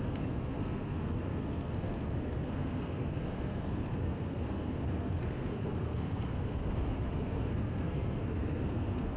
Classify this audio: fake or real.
fake